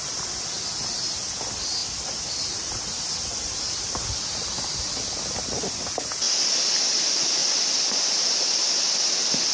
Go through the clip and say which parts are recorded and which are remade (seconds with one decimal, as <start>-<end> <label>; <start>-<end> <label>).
0.0-1.8 recorded; 1.8-4.9 remade; 4.9-7.4 recorded; 7.4-9.5 remade